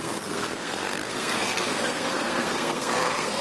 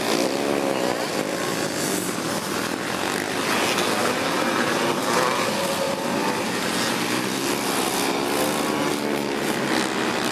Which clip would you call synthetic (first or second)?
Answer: first